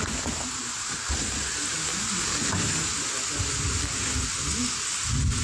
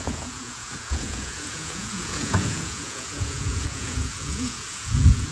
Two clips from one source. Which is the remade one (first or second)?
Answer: second